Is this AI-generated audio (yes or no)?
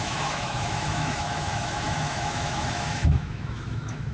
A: yes